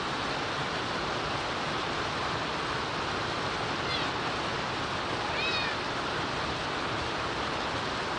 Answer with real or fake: real